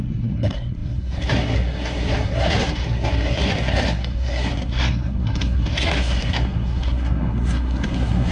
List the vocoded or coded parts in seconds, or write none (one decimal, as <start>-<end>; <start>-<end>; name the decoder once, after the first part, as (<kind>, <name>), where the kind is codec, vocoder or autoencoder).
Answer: 0.0-8.3 (codec, SNAC)